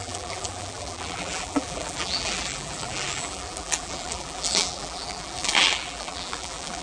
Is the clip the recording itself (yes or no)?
no